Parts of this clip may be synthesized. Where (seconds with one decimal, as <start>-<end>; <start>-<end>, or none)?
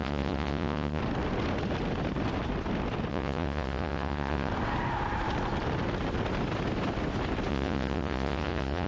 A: 0.0-1.0; 3.1-4.5; 7.5-8.9